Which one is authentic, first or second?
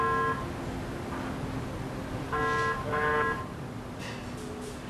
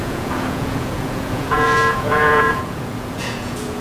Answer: first